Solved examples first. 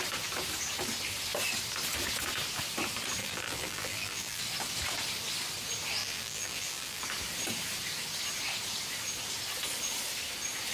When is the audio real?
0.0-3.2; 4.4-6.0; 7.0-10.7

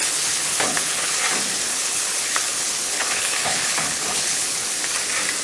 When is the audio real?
1.2-1.7; 4.9-5.4

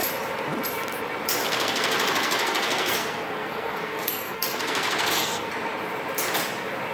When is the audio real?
0.0-1.4; 5.5-6.9

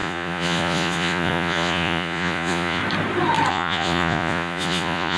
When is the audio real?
2.8-3.5